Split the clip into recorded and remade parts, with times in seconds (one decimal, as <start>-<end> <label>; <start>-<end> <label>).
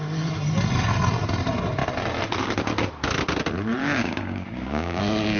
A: 0.0-3.8 recorded; 3.8-5.0 remade; 5.0-5.4 recorded